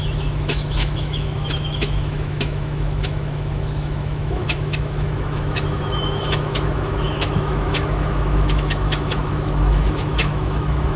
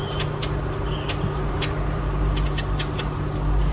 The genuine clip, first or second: second